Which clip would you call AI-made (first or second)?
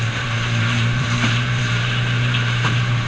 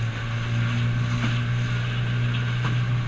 first